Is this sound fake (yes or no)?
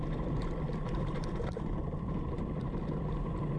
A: yes